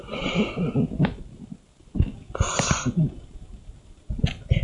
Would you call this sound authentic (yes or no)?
yes